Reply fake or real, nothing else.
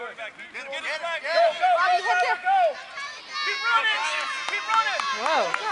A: real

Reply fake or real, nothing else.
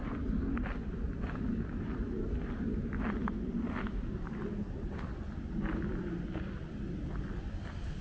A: real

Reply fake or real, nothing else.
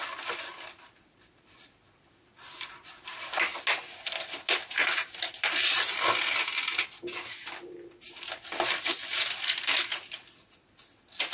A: real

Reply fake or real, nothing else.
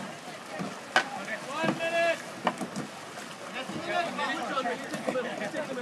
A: real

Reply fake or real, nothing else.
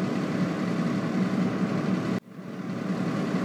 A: real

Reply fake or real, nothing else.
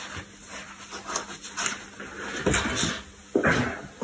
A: real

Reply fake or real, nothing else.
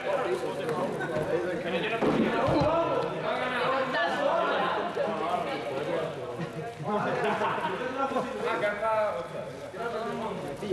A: real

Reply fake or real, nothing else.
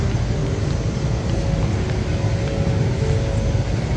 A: real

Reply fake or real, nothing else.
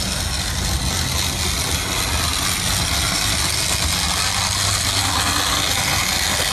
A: real